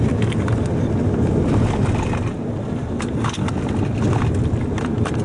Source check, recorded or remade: recorded